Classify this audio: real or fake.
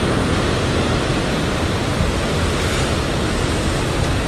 real